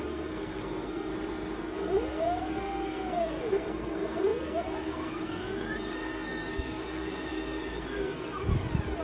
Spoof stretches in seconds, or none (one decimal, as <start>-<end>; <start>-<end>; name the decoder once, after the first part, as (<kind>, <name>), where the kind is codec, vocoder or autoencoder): 0.0-1.1 (codec, SNAC); 1.6-8.5